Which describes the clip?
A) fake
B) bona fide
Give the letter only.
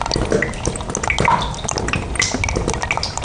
B